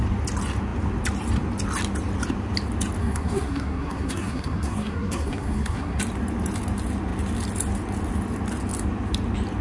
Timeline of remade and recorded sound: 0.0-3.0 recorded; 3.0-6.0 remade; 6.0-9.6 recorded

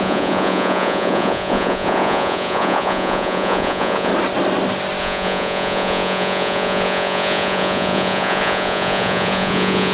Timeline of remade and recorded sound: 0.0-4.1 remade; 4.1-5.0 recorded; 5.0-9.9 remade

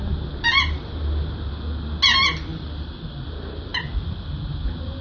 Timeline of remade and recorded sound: 0.0-2.5 recorded; 2.5-3.2 remade; 3.2-5.0 recorded

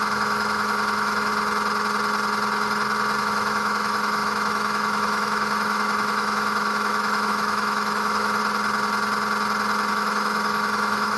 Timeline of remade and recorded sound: 0.0-1.3 remade; 1.3-3.2 recorded; 3.2-8.4 remade; 8.4-9.9 recorded; 9.9-11.2 remade